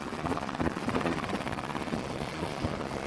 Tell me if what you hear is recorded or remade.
remade